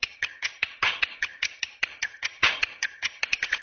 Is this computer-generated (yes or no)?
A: yes